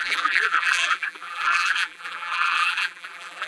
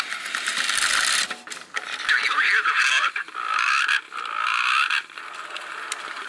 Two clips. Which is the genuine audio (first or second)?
second